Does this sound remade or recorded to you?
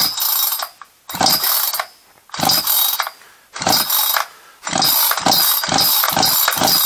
recorded